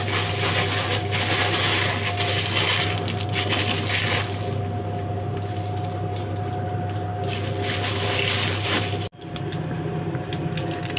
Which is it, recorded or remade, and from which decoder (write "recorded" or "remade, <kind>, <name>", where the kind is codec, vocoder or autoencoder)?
recorded